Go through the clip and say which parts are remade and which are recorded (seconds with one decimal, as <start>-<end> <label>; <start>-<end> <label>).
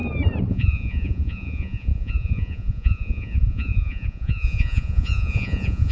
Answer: 0.0-0.5 recorded; 0.5-5.9 remade